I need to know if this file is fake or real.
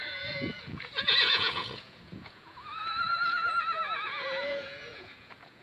fake